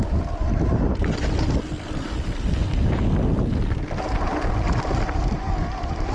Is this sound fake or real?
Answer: real